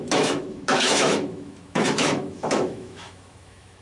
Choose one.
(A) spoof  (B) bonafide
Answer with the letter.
A